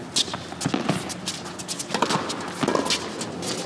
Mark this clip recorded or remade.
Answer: recorded